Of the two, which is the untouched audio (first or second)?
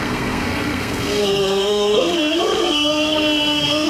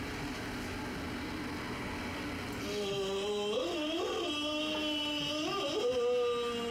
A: second